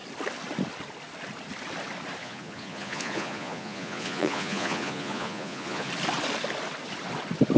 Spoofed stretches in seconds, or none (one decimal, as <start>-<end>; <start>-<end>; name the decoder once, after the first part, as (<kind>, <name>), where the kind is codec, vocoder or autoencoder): 2.2-5.9 (vocoder, Vocos)